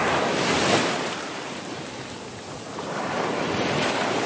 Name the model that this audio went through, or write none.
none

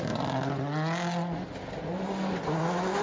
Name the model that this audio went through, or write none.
none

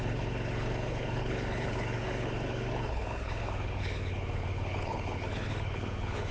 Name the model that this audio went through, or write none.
codec, HILCodec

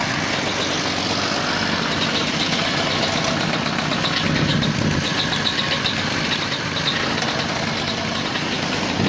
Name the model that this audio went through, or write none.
none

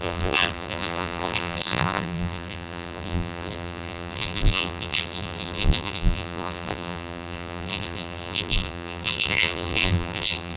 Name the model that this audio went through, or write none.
vocoder, BigVGAN v2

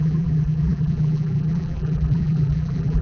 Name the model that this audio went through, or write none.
vocoder, BigVGAN v2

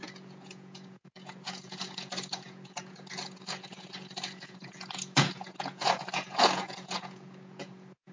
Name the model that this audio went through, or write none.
vocoder, Vocos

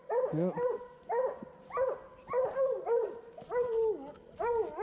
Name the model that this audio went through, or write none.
none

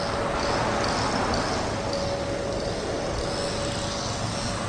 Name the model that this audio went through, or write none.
none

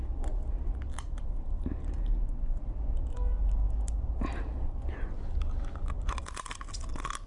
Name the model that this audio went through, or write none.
none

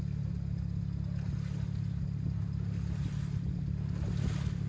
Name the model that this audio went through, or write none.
none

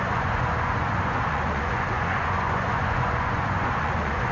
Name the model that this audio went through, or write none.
vocoder, Vocos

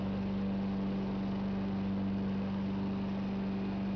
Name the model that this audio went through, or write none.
none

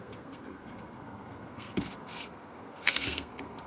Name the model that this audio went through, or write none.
codec, SNAC